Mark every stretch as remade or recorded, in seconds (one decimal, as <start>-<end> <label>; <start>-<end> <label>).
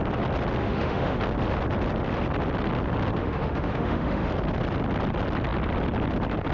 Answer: 0.0-0.6 recorded; 0.6-1.2 remade; 1.2-3.2 recorded; 3.2-4.3 remade; 4.3-6.5 recorded